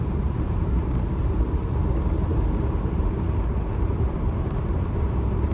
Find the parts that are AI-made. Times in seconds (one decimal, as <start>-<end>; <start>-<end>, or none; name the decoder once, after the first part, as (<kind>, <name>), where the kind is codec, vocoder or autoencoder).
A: 0.0-2.3 (vocoder, BigVGAN v2); 2.9-5.5